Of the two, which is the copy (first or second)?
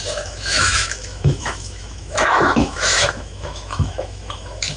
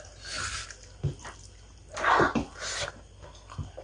first